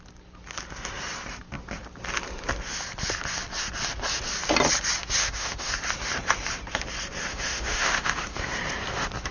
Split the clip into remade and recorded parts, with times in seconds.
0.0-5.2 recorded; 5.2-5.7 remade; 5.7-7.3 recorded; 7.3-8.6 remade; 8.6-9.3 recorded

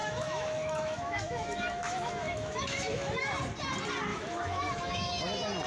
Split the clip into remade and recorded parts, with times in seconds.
0.0-3.4 remade; 3.4-4.1 recorded; 4.1-5.2 remade; 5.2-5.7 recorded